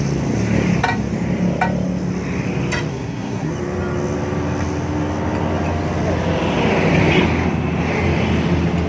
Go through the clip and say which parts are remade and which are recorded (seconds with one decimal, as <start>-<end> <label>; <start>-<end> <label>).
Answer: 0.0-2.9 recorded; 2.9-3.5 remade; 3.5-8.9 recorded